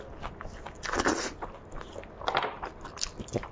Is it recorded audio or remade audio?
recorded